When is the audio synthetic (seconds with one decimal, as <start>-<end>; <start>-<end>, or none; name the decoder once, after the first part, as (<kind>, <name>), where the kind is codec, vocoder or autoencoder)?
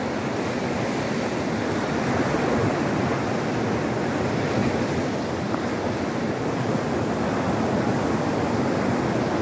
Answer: none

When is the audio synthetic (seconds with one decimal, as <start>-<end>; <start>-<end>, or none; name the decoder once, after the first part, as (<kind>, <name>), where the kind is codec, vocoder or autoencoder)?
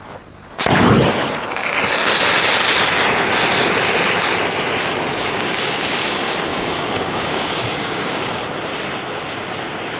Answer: 5.1-6.0 (codec, DAC); 6.5-8.4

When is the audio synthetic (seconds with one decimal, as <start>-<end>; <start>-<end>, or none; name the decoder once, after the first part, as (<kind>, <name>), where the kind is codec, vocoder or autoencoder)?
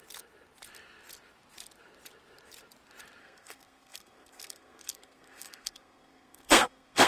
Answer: 3.2-7.1 (codec, SNAC)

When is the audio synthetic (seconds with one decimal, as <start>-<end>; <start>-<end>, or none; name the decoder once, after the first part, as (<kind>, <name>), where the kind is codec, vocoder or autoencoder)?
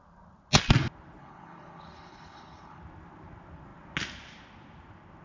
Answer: 1.2-2.8 (codec, HILCodec)